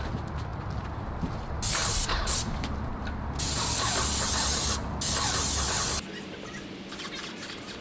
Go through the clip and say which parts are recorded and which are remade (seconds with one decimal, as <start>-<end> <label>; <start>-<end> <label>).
0.0-7.8 recorded